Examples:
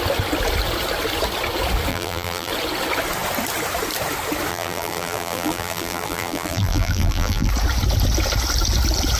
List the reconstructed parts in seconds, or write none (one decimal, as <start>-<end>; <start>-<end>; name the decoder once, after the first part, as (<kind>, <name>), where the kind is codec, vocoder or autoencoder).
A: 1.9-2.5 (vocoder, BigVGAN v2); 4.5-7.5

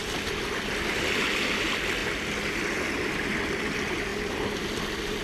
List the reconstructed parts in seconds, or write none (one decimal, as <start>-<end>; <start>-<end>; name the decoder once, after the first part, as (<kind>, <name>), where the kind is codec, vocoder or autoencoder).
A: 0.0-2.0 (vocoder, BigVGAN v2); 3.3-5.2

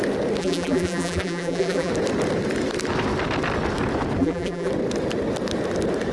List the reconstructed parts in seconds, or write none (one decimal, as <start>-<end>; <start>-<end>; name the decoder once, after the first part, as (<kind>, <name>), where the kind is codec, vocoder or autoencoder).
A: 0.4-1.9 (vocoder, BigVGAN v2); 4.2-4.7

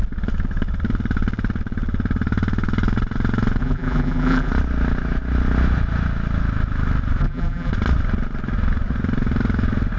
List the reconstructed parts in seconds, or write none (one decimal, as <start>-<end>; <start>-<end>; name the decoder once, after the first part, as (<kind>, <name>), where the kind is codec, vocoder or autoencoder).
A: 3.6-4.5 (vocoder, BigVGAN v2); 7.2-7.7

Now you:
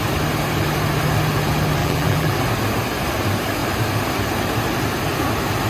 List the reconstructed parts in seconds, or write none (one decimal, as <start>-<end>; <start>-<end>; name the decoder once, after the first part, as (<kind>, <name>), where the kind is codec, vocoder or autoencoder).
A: 1.8-2.3 (vocoder, BigVGAN v2)